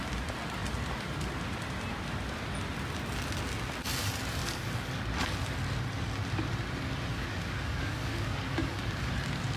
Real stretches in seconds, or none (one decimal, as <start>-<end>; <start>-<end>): 0.0-4.4; 5.0-7.1; 9.1-9.6